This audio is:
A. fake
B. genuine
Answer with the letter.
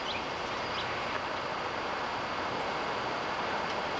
B